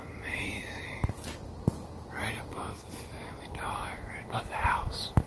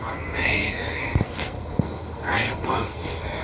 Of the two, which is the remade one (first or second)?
second